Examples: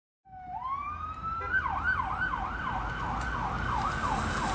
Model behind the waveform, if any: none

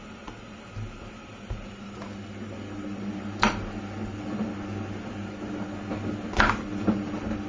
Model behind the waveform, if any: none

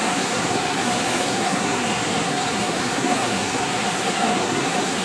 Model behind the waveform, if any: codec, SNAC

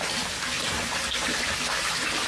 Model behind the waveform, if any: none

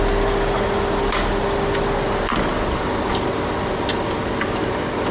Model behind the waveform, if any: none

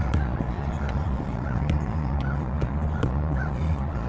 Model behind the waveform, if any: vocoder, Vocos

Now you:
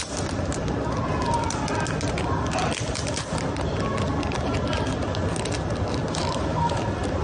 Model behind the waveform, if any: none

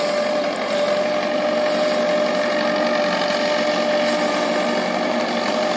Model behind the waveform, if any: none